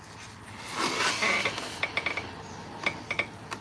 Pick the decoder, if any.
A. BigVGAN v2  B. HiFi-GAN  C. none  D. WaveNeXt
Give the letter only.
C